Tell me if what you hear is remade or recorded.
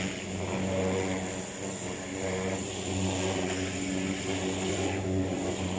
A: recorded